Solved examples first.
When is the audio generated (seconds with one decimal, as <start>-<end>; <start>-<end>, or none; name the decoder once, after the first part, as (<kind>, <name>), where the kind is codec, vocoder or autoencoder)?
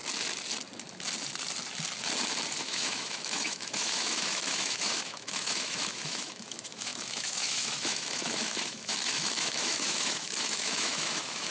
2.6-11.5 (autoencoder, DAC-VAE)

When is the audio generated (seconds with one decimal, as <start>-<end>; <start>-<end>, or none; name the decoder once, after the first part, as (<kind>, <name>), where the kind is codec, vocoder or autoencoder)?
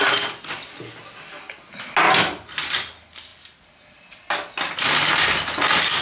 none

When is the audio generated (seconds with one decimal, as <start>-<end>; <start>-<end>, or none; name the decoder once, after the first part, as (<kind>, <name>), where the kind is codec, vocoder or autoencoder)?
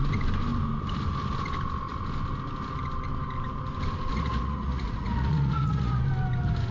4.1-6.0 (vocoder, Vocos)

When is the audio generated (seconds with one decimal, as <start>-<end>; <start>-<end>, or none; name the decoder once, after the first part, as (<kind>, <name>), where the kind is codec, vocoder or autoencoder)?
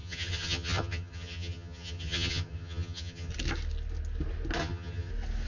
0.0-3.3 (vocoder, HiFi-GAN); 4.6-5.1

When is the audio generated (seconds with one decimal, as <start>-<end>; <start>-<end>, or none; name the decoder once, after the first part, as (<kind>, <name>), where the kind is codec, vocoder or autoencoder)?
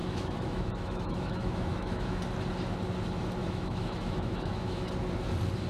0.0-2.2 (autoencoder, DAC-VAE); 3.4-4.9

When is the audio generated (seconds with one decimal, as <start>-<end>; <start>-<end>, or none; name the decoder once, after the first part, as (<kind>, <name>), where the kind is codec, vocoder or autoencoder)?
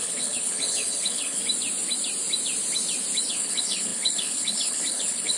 0.0-1.4 (codec, HILCodec); 3.3-5.4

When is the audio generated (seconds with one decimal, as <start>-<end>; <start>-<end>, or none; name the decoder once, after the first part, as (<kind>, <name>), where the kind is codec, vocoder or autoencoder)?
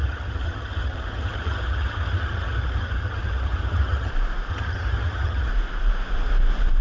0.0-4.1 (vocoder, HiFi-GAN); 4.5-5.5